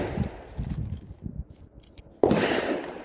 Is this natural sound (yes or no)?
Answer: yes